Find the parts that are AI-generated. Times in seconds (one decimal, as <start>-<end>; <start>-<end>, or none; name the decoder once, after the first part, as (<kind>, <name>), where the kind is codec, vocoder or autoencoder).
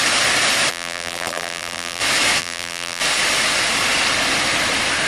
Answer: 0.7-2.0 (vocoder, BigVGAN v2); 2.4-3.0